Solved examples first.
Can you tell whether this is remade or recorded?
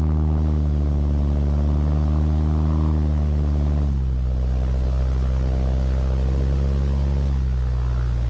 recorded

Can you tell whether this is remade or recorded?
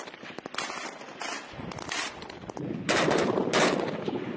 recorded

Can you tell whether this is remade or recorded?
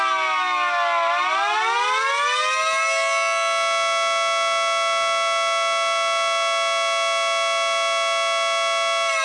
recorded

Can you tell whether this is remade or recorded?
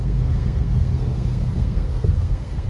remade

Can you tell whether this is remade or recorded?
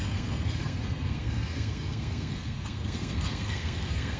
remade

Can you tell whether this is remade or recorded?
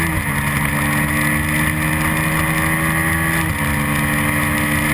recorded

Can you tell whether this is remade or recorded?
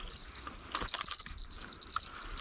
recorded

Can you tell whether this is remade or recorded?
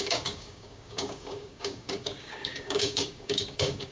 remade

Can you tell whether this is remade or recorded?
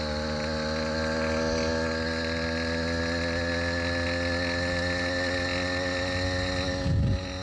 recorded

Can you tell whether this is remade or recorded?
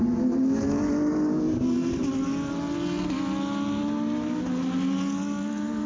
recorded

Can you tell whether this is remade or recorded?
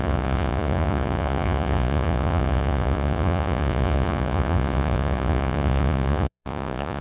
remade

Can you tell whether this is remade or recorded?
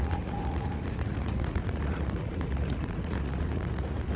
remade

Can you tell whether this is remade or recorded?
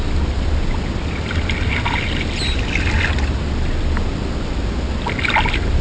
recorded